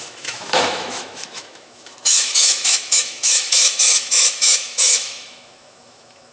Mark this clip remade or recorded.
remade